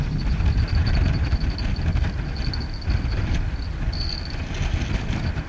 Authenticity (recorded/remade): recorded